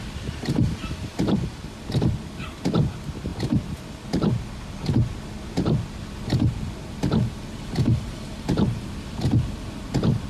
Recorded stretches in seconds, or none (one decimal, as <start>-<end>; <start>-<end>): 0.0-10.3